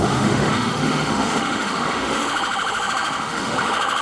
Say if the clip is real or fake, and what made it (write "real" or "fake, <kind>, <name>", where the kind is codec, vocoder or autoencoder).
fake, autoencoder, DAC-VAE